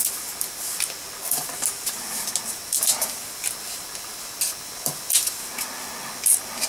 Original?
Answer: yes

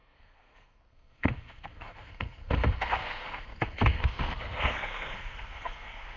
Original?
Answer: no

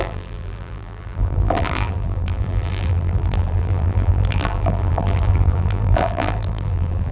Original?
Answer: no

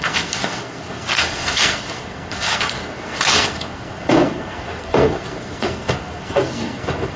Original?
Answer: no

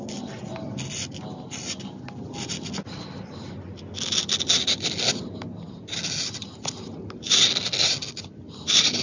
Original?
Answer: yes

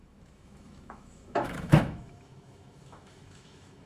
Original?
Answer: no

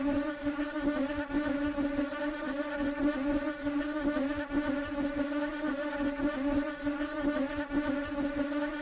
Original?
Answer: yes